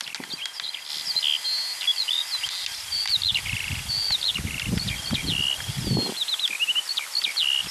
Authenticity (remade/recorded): recorded